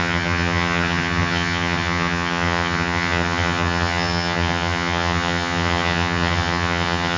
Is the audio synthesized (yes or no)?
yes